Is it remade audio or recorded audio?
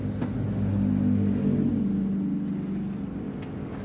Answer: recorded